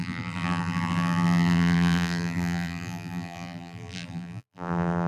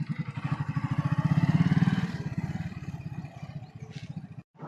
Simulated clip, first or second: first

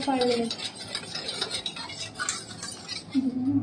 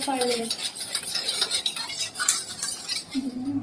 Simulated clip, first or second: second